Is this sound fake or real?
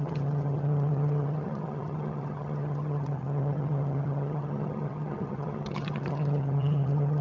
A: fake